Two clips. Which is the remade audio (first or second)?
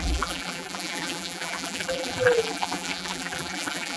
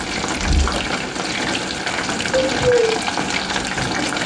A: first